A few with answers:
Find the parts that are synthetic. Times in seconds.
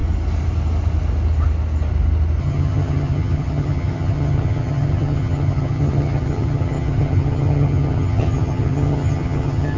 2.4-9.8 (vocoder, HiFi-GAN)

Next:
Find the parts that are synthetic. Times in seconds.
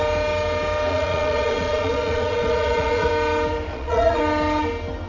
0.9-3.1 (vocoder, Vocos); 3.7-4.2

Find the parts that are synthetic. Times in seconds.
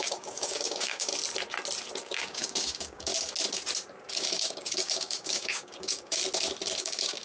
0.0-1.1 (codec, DAC); 2.0-3.1; 4.2-6.2; 6.8-7.2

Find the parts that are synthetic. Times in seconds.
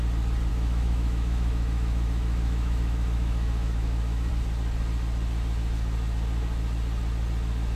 0.5-4.3 (autoencoder, DAC-VAE)